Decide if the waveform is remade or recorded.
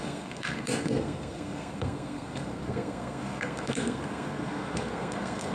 remade